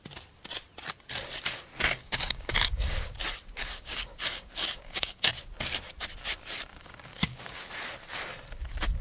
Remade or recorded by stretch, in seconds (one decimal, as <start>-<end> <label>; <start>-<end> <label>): 0.0-2.0 recorded; 2.0-3.1 remade; 3.1-3.6 recorded; 3.6-5.3 remade; 5.3-6.7 recorded; 6.7-7.6 remade; 7.6-9.0 recorded